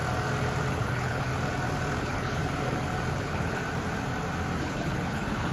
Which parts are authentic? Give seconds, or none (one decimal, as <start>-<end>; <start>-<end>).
0.0-0.7; 1.3-2.0; 2.4-3.1; 3.6-4.6